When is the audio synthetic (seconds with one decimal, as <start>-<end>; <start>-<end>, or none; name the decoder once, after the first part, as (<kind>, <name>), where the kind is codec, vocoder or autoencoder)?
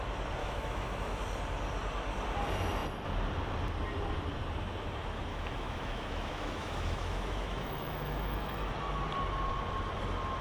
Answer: 0.4-1.2 (autoencoder, DAC-VAE); 5.3-8.7